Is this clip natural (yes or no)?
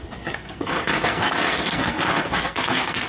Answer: no